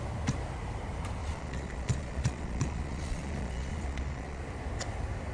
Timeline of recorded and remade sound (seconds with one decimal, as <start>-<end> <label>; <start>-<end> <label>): 0.0-1.2 recorded; 1.2-4.4 remade; 4.4-5.3 recorded